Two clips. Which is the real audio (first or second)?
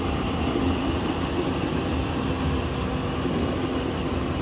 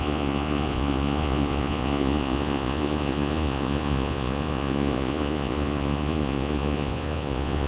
first